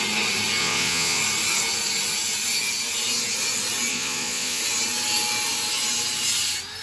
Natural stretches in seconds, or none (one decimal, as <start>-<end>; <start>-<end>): 0.0-0.6; 1.2-3.9; 4.6-6.8